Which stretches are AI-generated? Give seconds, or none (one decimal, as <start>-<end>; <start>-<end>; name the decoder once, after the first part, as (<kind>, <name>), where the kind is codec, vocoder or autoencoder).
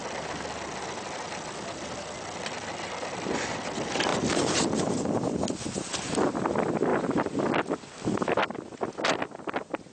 none